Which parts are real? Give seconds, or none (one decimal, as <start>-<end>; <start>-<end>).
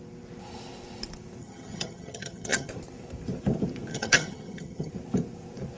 0.0-1.4; 2.7-3.9; 4.9-5.8